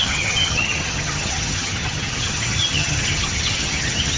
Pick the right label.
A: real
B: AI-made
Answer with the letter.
B